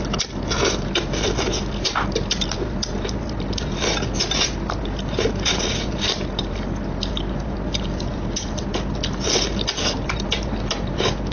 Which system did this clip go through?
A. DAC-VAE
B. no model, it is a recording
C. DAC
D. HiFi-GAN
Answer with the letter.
B